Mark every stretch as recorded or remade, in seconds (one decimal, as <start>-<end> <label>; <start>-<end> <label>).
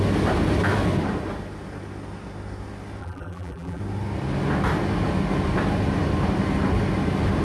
0.0-3.0 recorded; 3.0-3.8 remade; 3.8-7.4 recorded